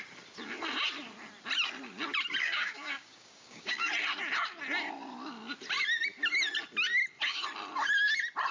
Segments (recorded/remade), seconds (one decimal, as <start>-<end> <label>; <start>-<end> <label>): 0.0-2.4 recorded; 2.4-3.9 remade; 3.9-8.5 recorded